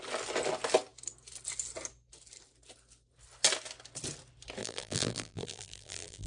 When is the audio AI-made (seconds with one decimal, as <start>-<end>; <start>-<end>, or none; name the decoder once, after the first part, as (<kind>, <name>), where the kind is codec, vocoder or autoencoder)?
4.6-6.3 (vocoder, BigVGAN v2)

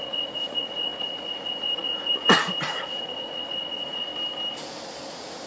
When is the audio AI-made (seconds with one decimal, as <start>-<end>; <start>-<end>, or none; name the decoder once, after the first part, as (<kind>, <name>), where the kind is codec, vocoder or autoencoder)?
0.0-4.1 (vocoder, Vocos); 5.1-5.5

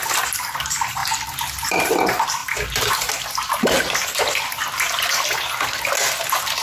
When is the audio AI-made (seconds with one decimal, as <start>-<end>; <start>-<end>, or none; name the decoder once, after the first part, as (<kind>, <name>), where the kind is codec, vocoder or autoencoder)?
1.0-1.9 (vocoder, BigVGAN v2)

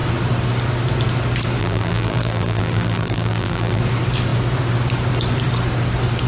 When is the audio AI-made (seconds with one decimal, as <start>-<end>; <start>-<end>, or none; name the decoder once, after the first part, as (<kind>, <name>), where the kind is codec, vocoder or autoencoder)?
1.6-3.8 (vocoder, BigVGAN v2)

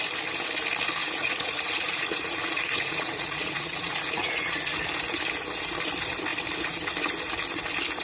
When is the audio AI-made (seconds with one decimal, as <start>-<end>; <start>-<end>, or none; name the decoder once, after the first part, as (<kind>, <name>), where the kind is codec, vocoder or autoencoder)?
1.0-4.6 (vocoder, Vocos)

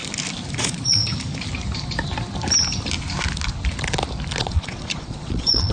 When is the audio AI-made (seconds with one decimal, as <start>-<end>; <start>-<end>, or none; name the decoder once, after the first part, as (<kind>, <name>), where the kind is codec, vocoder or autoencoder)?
0.5-1.0 (vocoder, Vocos); 4.4-5.7